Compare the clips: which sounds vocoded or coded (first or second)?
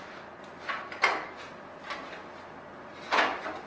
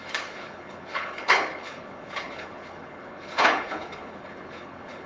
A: second